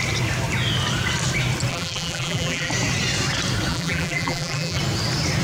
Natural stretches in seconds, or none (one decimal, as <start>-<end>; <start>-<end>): 0.0-1.7; 2.7-3.7; 4.8-5.4